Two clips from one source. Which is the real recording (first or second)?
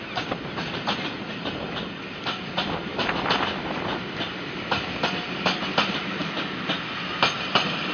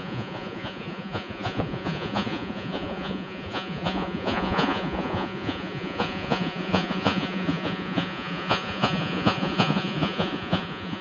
first